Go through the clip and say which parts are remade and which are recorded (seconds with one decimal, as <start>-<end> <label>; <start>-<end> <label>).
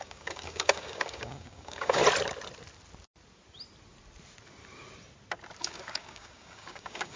0.0-2.0 remade; 2.0-5.6 recorded; 5.6-7.2 remade